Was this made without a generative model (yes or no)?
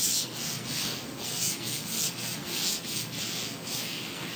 no